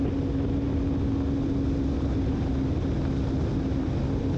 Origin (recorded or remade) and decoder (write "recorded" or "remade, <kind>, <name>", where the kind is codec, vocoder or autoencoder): recorded